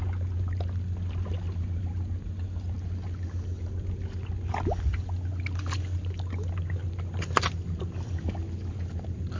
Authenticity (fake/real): real